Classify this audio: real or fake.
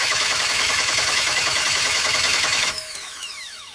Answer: fake